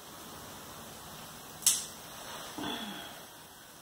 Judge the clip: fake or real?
real